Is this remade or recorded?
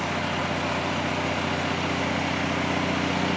recorded